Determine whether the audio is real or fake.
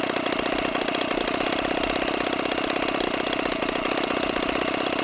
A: real